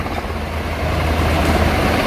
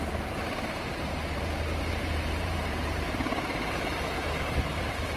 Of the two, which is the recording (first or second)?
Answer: first